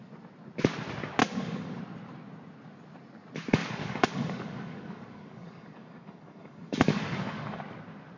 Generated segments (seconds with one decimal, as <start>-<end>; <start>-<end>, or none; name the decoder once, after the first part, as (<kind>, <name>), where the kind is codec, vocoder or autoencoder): 1.2-1.8 (codec, DAC); 3.6-7.6